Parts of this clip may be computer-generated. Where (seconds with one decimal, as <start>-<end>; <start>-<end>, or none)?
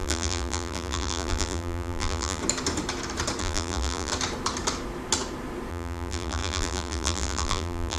0.0-2.4; 3.4-4.1; 5.7-8.0